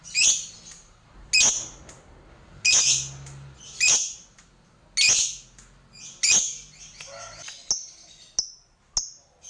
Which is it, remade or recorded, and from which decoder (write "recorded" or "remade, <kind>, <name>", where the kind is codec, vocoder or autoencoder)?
recorded